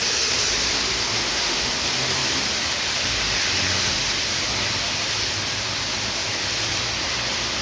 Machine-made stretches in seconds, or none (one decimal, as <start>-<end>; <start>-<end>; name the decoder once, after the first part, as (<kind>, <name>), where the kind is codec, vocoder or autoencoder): 1.1-1.7 (autoencoder, DAC-VAE)